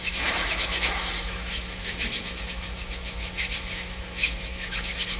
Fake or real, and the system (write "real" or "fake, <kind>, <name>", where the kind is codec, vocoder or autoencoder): fake, autoencoder, DAC-VAE